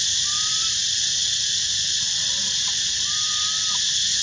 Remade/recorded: recorded